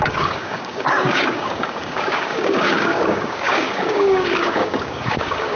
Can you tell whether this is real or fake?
fake